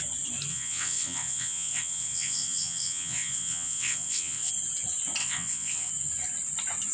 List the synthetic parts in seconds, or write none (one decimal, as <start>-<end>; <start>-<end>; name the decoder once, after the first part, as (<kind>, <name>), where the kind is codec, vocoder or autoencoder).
0.5-4.5 (vocoder, WaveNeXt); 5.2-5.9